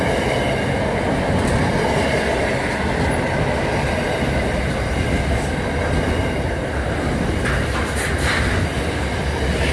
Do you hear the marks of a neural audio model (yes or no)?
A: no